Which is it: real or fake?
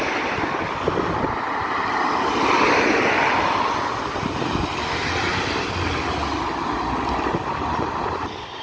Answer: real